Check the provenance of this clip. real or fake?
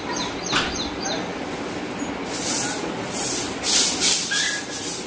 real